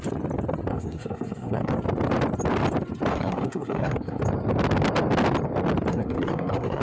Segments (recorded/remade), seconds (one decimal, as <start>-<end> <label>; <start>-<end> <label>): 0.0-0.7 recorded; 0.7-1.7 remade; 1.7-3.1 recorded; 3.1-4.2 remade; 4.2-5.9 recorded; 5.9-6.8 remade